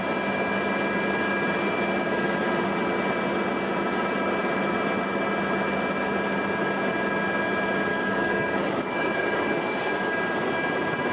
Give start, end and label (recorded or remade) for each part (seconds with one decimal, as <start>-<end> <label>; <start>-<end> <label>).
0.0-7.9 recorded; 7.9-9.9 remade; 9.9-11.1 recorded